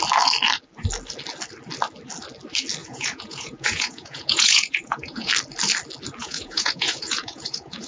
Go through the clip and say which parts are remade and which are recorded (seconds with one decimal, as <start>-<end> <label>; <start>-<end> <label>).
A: 0.0-2.8 recorded; 2.8-5.3 remade; 5.3-6.2 recorded; 6.2-7.9 remade